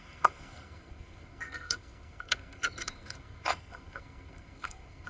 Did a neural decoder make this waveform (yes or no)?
yes